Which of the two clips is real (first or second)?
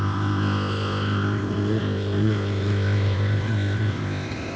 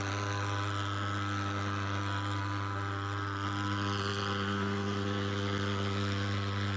second